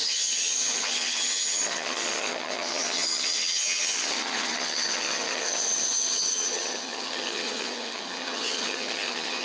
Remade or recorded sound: remade